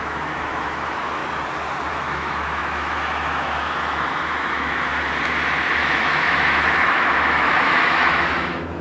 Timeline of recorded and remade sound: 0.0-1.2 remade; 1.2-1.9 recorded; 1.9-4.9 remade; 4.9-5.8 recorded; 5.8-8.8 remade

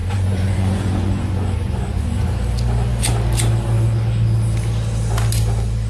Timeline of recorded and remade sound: 0.0-2.3 remade; 2.3-5.9 recorded